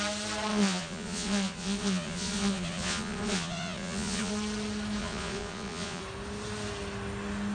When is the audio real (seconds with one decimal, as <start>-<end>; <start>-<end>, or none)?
0.0-0.5; 4.3-5.0; 6.0-7.5